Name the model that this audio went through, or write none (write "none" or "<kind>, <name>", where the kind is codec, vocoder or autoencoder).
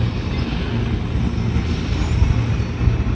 none